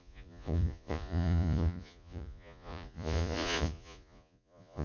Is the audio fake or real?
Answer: fake